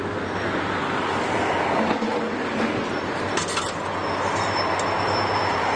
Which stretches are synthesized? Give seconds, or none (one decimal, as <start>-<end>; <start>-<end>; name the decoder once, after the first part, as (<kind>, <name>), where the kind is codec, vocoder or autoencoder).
0.8-2.8 (codec, DAC)